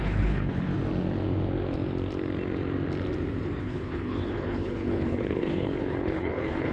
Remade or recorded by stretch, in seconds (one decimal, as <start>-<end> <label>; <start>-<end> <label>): 0.0-0.7 remade; 0.7-3.6 recorded; 3.6-6.7 remade